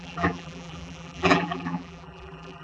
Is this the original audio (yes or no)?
no